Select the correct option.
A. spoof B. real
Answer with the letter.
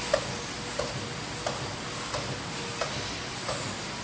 B